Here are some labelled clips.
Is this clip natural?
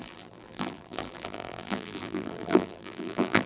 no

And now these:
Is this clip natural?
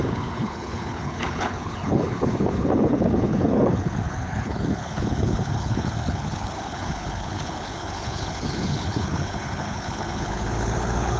no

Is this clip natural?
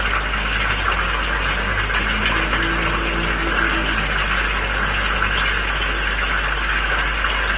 yes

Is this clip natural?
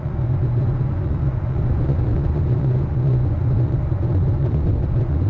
no